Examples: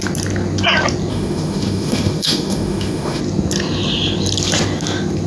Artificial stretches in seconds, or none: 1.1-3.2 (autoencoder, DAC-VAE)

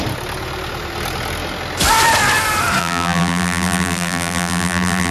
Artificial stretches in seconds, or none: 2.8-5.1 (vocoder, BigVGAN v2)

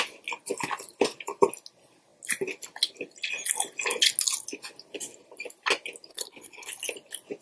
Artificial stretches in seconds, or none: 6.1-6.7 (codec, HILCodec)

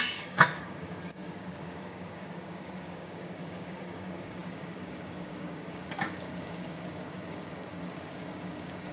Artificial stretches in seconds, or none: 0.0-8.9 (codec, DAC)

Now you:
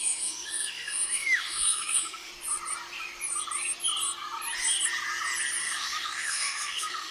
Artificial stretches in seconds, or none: 0.0-2.3 (autoencoder, DAC-VAE); 5.6-7.1

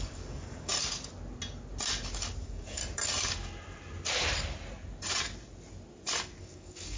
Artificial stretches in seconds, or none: 0.0-0.7 (codec, DAC); 2.4-2.8; 6.4-7.0

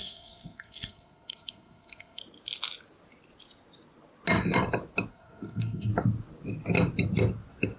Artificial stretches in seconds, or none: 0.0-2.2 (codec, SNAC); 5.1-5.9

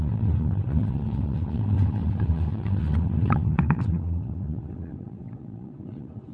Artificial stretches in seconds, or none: 0.0-6.3 (vocoder, WaveNeXt)